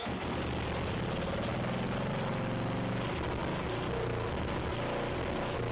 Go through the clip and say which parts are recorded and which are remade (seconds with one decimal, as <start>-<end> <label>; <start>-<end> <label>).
0.0-5.7 recorded